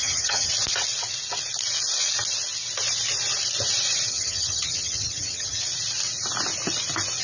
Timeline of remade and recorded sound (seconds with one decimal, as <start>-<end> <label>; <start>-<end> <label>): 0.0-0.5 remade; 0.5-4.1 recorded; 4.1-5.6 remade; 5.6-7.2 recorded